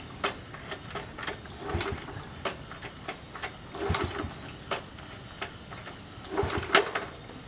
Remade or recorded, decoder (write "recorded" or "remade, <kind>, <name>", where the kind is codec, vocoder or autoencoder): recorded